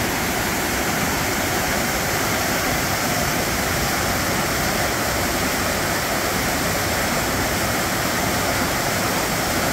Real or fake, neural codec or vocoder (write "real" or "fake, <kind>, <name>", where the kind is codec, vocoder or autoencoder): fake, vocoder, BigVGAN v2